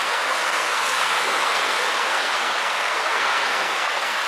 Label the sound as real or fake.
fake